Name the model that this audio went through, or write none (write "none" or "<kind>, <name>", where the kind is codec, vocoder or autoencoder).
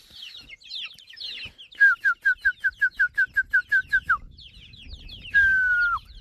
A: none